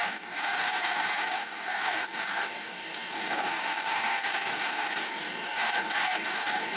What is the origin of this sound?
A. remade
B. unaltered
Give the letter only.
A